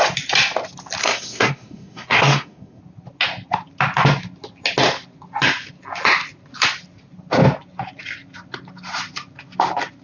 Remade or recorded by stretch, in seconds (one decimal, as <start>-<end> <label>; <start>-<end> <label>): 0.0-1.0 recorded; 1.0-2.8 remade; 2.8-10.0 recorded